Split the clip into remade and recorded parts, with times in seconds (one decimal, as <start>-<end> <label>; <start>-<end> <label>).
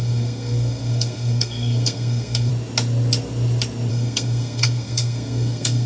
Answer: 0.0-2.5 remade; 2.5-3.9 recorded; 3.9-5.9 remade